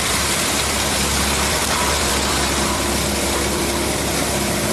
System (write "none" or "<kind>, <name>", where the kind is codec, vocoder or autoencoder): vocoder, BigVGAN v2